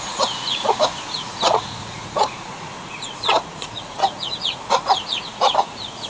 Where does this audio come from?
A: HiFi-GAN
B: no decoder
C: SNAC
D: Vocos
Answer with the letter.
D